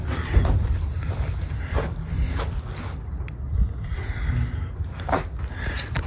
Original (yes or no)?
yes